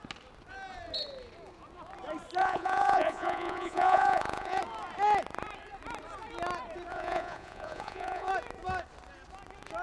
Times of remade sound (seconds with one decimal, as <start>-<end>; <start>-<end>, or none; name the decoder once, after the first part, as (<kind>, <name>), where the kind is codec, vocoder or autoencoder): 2.4-4.6 (vocoder, Vocos); 6.9-8.3

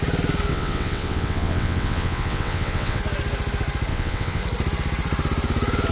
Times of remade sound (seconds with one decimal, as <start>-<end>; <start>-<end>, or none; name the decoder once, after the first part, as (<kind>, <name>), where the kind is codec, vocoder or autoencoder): 0.5-3.0 (vocoder, WaveNeXt); 3.9-4.4

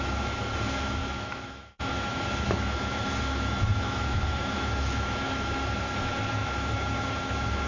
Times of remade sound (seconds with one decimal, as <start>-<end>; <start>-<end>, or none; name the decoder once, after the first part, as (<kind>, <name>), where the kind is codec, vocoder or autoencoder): 0.0-7.7 (autoencoder, DAC-VAE)

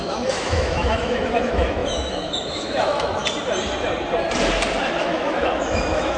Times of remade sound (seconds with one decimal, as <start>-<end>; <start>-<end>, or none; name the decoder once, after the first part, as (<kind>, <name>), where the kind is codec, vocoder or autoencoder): 0.0-3.2 (autoencoder, DAC-VAE); 5.0-6.2

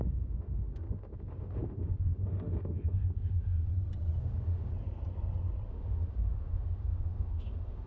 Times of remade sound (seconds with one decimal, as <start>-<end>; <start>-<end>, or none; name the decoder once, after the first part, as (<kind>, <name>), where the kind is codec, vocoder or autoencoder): 0.0-3.7 (autoencoder, DAC-VAE); 4.2-4.7; 5.7-7.9

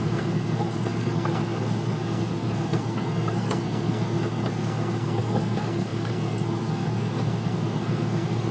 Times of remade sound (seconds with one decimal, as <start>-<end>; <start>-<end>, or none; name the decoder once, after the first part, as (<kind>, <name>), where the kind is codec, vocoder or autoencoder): 0.0-8.5 (codec, SNAC)